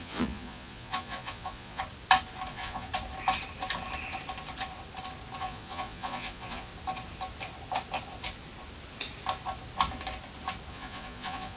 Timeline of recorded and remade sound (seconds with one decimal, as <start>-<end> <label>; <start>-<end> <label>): 0.0-1.8 remade; 1.8-2.5 recorded; 2.5-2.9 remade; 2.9-5.4 recorded; 5.4-6.7 remade; 6.7-10.7 recorded; 10.7-11.6 remade